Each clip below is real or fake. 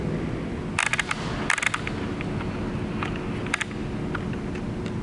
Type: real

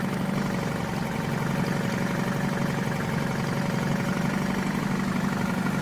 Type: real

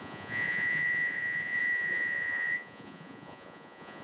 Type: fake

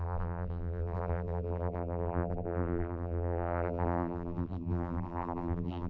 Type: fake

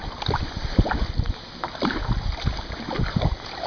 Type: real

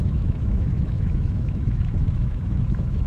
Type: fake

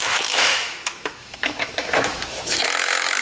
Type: fake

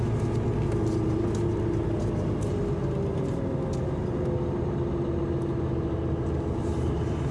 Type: real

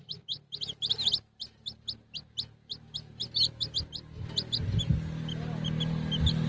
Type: real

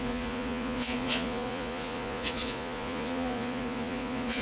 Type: fake